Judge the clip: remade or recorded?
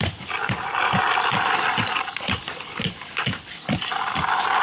remade